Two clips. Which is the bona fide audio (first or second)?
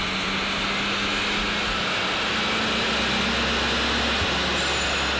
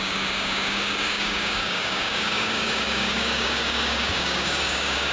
first